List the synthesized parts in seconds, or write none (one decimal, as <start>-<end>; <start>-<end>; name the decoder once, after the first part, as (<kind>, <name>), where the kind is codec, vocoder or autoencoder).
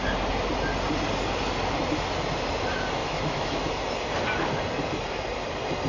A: 3.0-3.7 (autoencoder, DAC-VAE)